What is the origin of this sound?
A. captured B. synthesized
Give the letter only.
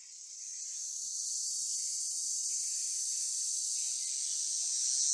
A